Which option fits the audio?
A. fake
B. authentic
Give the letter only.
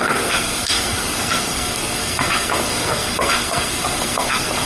A